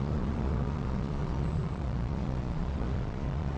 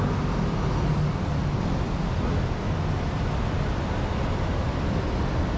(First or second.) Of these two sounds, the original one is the second